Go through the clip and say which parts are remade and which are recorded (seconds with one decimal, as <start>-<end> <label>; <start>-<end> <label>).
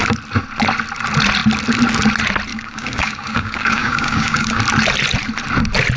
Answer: 0.0-2.5 recorded; 2.5-4.6 remade; 4.6-6.0 recorded